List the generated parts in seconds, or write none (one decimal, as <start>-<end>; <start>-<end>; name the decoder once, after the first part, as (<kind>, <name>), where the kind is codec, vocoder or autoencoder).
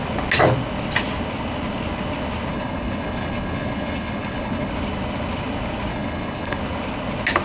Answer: 2.5-4.7 (codec, HILCodec); 5.9-6.6